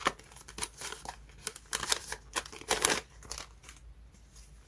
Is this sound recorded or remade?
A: recorded